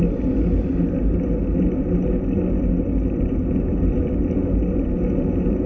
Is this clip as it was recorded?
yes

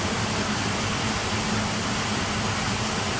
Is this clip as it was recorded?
yes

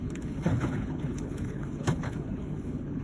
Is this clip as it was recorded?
no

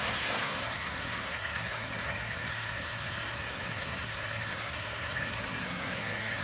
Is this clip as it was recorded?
no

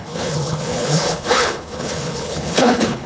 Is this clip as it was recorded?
no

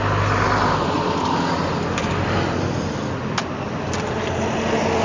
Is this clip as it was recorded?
yes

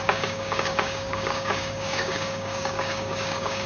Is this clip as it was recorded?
no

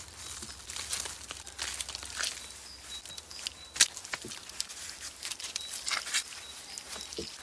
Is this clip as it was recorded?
yes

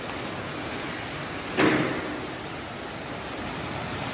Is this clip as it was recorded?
yes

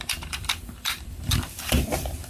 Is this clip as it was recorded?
no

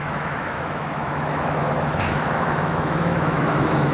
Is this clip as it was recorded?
no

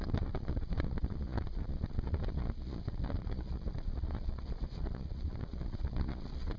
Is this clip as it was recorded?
no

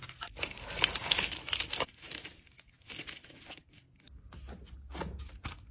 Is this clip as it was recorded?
yes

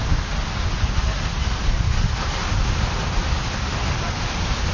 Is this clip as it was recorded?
yes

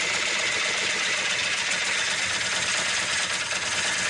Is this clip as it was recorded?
yes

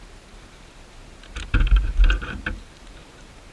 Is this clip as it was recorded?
no